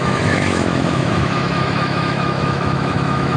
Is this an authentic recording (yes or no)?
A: no